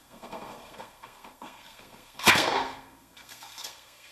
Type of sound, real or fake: fake